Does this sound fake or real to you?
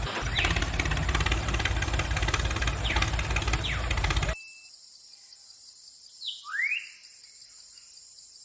real